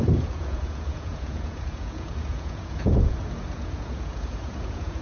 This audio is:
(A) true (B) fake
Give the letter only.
B